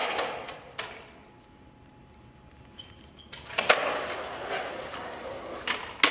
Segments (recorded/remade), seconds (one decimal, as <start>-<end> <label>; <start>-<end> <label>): 0.0-6.1 recorded